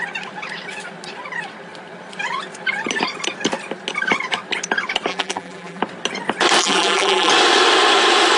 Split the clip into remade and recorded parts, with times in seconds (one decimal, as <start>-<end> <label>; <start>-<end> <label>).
0.0-5.1 recorded; 5.1-5.8 remade; 5.8-6.6 recorded; 6.6-7.3 remade; 7.3-8.4 recorded